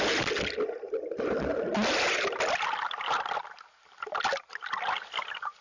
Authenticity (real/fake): real